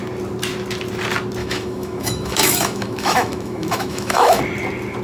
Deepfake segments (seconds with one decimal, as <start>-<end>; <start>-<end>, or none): 1.4-4.4